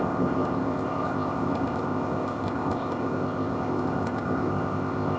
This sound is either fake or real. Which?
fake